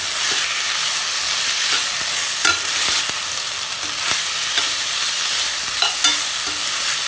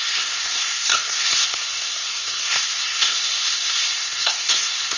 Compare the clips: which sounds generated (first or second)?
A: second